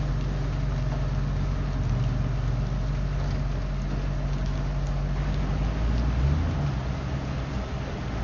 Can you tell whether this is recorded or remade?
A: recorded